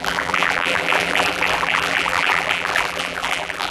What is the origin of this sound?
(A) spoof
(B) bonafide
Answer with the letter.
A